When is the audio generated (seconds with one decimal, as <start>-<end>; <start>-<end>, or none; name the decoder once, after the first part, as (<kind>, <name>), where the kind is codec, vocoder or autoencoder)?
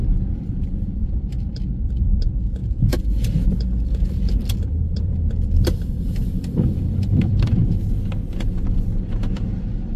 0.0-7.6 (vocoder, BigVGAN v2); 8.4-10.0